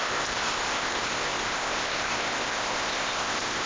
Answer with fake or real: fake